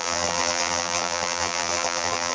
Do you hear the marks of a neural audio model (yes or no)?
yes